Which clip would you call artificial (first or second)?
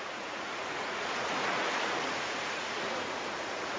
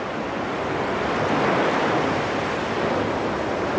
first